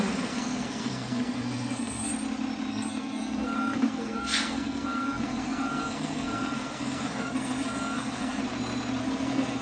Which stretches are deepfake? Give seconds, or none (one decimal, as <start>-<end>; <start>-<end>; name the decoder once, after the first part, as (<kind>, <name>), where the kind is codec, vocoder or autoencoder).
0.0-2.1 (codec, SNAC); 2.7-8.4; 9.0-9.6